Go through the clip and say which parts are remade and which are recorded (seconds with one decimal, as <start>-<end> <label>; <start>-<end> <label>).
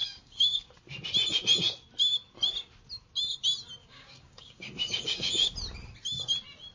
0.0-0.7 remade; 0.7-3.8 recorded; 3.8-5.5 remade; 5.5-6.7 recorded